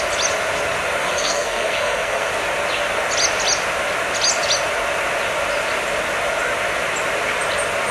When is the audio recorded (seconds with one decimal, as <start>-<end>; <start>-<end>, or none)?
0.0-1.0; 2.3-7.9